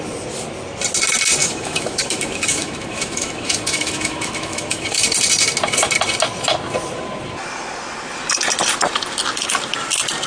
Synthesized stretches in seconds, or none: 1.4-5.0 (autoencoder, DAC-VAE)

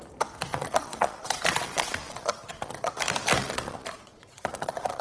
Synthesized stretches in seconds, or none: 0.5-2.9 (vocoder, Vocos); 3.4-5.0

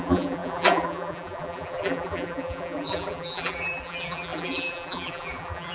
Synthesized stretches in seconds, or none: 0.0-5.7 (vocoder, BigVGAN v2)

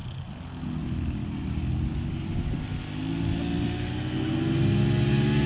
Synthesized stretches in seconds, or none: none

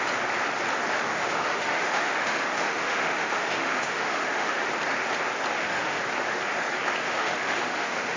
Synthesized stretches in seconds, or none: 1.1-4.7 (autoencoder, DAC-VAE); 5.5-6.0; 7.0-8.2